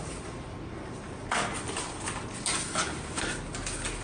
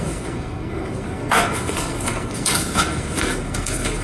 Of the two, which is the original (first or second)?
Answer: first